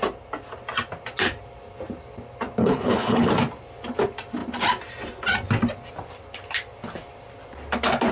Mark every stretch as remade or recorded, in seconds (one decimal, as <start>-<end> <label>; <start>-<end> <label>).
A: 0.0-2.6 recorded; 2.6-3.3 remade; 3.3-8.1 recorded